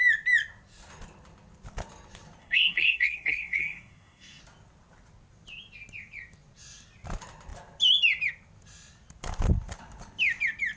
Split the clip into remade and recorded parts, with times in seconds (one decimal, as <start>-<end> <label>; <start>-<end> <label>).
0.0-2.4 recorded; 2.4-4.4 remade; 4.4-10.8 recorded

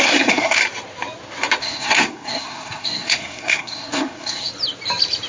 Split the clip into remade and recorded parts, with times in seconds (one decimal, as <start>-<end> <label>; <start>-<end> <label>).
0.0-0.6 remade; 0.6-1.6 recorded; 1.6-4.5 remade; 4.5-5.3 recorded